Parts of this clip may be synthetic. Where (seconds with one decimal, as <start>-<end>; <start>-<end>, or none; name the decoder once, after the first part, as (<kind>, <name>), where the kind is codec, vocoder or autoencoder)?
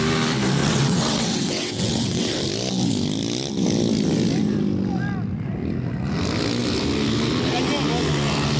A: 0.6-2.4 (vocoder, WaveNeXt)